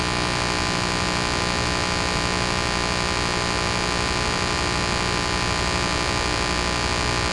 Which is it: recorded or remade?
recorded